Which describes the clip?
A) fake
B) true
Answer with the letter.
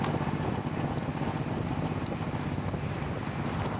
B